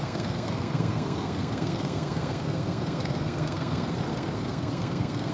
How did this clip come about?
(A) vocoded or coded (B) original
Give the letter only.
A